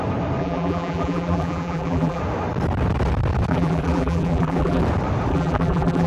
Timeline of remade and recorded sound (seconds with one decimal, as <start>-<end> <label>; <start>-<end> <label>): 0.0-0.4 recorded; 0.4-2.2 remade; 2.2-3.5 recorded; 3.5-4.8 remade; 4.8-5.3 recorded; 5.3-6.1 remade